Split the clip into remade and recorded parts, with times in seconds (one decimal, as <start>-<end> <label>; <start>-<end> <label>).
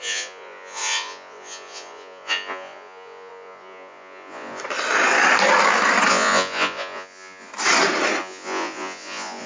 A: 0.0-4.6 remade; 4.6-6.1 recorded; 6.1-7.5 remade; 7.5-8.2 recorded; 8.2-9.5 remade